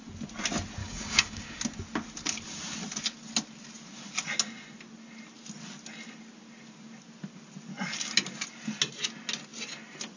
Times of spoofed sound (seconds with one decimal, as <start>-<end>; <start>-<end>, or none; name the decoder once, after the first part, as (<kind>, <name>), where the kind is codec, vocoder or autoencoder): 0.8-1.6 (codec, DAC)